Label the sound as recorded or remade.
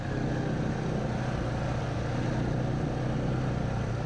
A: recorded